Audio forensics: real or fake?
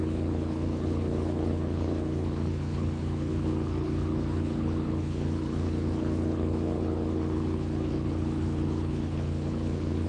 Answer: fake